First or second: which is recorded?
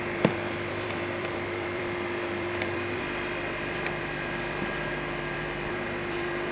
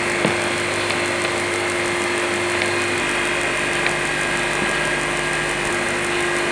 second